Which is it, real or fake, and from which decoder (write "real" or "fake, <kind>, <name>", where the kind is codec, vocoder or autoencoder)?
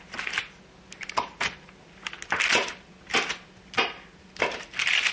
real